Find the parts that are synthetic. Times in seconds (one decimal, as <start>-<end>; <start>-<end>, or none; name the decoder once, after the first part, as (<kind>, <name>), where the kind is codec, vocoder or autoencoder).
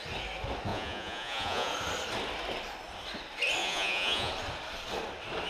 0.7-1.7 (vocoder, Vocos); 3.6-4.3